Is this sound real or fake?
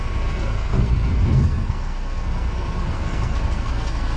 fake